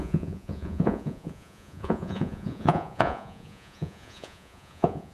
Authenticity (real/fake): fake